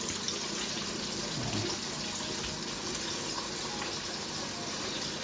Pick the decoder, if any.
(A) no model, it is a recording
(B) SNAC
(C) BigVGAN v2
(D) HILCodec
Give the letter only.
A